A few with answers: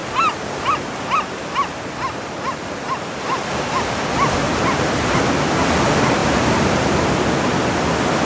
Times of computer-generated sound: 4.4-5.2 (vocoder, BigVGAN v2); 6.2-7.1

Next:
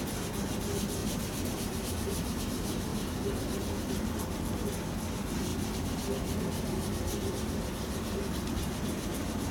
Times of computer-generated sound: 1.0-2.4 (vocoder, BigVGAN v2)

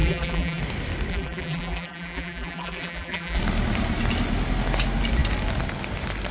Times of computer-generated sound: 0.0-0.6 (vocoder, BigVGAN v2); 1.1-3.4

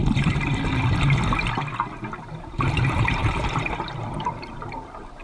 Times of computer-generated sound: 2.4-5.2 (vocoder, BigVGAN v2)

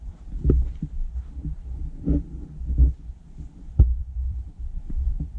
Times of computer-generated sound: 1.4-2.3 (vocoder, BigVGAN v2); 4.0-5.4